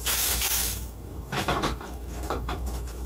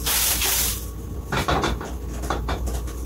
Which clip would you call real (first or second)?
second